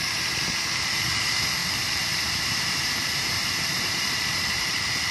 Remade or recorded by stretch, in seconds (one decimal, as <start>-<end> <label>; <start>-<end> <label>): 0.0-1.6 recorded; 1.6-5.1 remade